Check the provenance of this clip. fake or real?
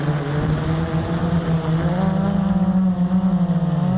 real